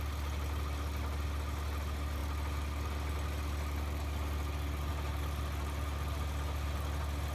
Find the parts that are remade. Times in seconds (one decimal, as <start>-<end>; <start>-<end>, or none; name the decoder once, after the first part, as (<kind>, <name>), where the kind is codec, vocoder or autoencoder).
none